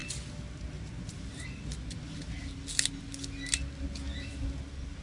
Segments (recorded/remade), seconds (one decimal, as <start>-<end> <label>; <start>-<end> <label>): 0.0-5.0 recorded